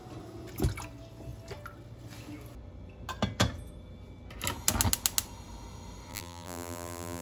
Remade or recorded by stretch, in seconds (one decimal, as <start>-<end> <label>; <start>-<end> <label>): 0.0-6.1 recorded; 6.1-7.2 remade